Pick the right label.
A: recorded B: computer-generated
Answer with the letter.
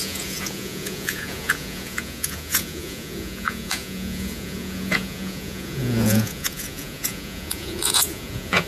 B